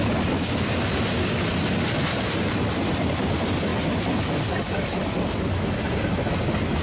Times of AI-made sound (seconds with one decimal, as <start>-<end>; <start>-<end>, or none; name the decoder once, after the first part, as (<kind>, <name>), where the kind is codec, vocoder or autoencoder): none